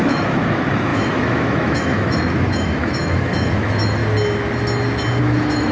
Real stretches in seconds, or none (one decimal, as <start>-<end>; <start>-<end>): 4.0-5.2